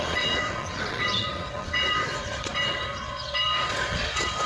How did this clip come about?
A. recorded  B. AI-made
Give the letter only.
B